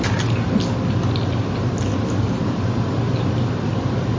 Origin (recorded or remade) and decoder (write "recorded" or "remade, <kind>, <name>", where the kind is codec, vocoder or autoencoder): recorded